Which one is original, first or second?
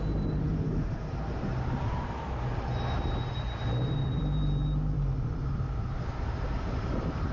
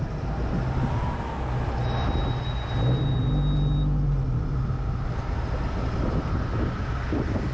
second